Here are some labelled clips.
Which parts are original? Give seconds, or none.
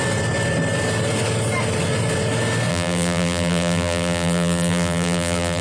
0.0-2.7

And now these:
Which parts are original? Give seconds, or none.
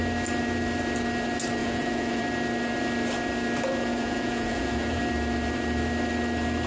0.0-1.6; 2.2-3.9; 5.0-6.7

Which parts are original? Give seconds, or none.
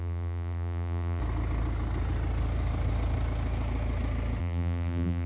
1.2-4.4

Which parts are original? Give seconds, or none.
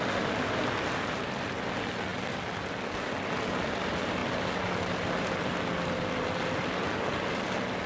0.0-7.9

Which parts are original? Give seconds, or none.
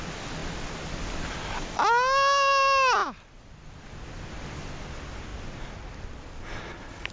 0.0-7.1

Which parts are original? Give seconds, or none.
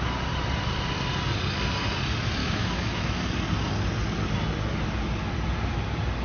0.0-2.4; 3.2-6.2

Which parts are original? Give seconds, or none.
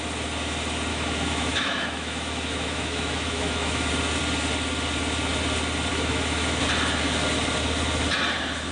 0.0-0.9; 3.9-5.9; 6.6-8.7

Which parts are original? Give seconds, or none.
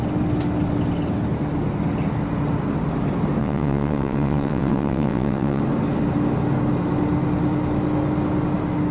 0.0-3.4; 5.6-8.9